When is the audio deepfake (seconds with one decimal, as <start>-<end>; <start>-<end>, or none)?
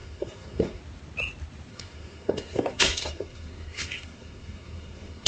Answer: 0.0-0.8; 1.7-5.3